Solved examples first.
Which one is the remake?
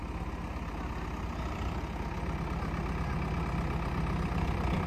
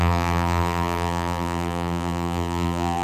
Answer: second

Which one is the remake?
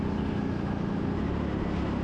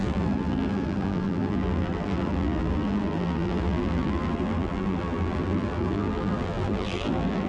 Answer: second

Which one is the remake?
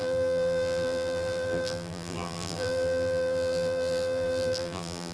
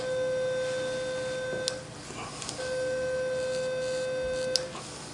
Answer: first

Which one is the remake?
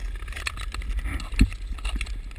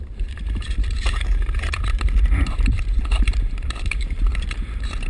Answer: second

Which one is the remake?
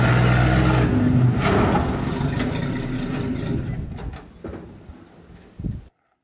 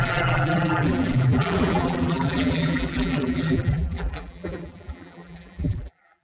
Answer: second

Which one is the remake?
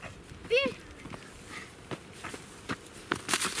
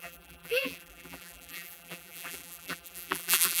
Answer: second